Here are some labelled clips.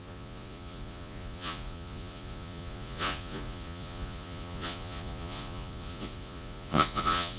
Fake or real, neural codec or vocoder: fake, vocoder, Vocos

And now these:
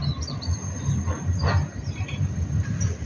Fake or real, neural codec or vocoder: real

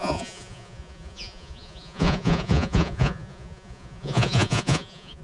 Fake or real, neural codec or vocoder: fake, vocoder, Vocos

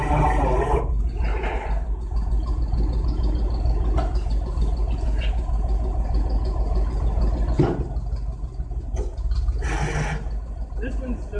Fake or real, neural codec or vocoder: real